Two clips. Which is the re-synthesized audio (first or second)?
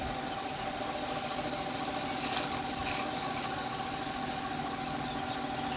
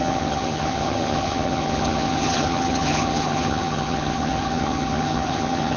second